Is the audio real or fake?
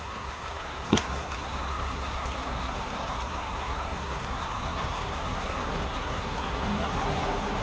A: fake